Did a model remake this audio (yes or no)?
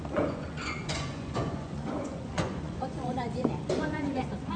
yes